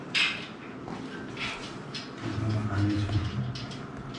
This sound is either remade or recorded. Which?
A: recorded